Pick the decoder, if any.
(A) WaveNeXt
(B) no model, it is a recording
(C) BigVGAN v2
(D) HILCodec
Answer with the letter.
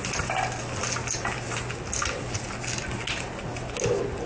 B